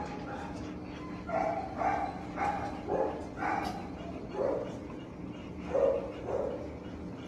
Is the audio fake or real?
real